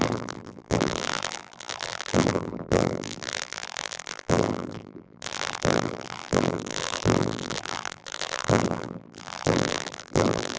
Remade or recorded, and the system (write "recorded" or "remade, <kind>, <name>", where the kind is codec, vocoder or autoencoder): remade, vocoder, BigVGAN v2